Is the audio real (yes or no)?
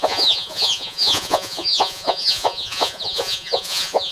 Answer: no